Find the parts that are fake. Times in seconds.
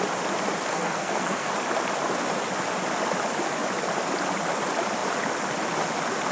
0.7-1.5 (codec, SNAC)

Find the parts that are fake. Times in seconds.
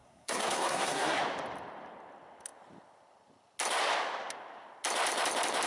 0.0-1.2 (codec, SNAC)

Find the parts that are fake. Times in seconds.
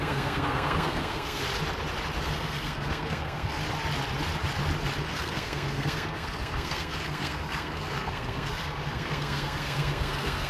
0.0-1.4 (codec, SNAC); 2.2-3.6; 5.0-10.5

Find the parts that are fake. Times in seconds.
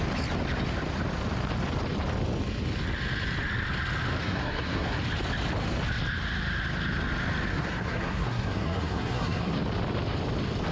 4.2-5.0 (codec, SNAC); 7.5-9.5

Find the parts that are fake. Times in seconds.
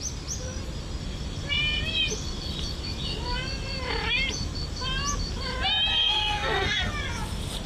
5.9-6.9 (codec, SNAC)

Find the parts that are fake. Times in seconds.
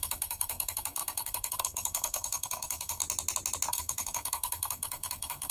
0.0-3.0 (codec, SNAC); 3.7-5.5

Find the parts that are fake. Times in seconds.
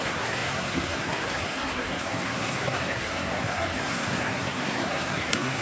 0.0-5.6 (codec, SNAC)